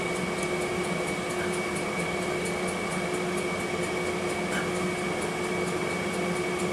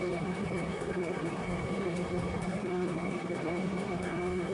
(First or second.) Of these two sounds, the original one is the first